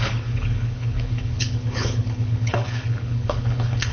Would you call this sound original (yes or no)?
no